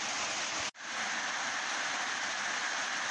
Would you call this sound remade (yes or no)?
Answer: no